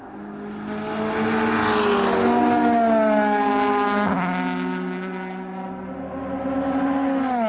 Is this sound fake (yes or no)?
no